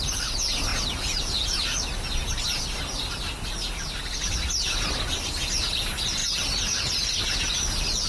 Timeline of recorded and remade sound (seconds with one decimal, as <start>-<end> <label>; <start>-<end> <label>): 0.0-8.1 recorded